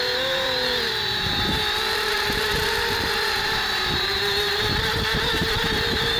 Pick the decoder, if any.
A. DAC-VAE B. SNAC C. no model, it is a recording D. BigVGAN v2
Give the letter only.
D